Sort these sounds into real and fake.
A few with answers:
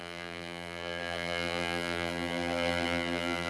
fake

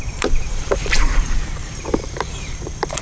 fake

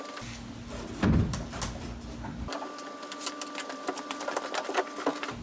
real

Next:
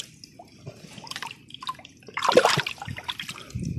real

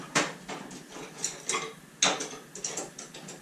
real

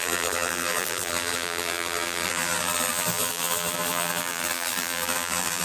fake